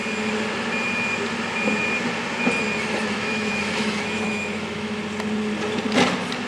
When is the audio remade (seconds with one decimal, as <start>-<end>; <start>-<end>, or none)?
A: 3.0-5.0